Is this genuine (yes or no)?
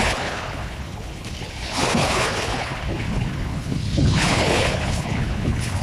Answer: no